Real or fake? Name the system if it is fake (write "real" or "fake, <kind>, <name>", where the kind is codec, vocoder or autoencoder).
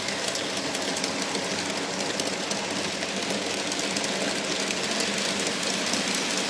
real